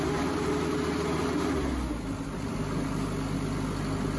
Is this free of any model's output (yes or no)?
yes